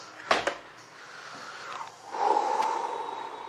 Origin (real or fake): real